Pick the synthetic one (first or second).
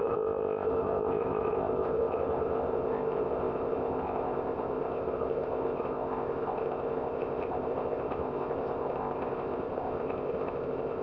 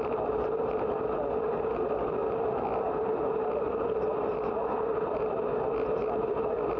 first